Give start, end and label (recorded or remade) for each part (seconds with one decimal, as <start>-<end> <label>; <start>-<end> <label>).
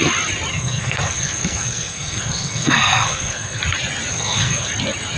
0.0-0.5 recorded; 0.5-3.6 remade; 3.6-4.1 recorded; 4.1-4.7 remade; 4.7-5.2 recorded